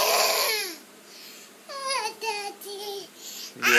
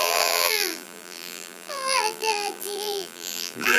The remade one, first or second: second